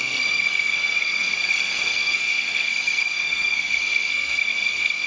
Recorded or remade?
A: remade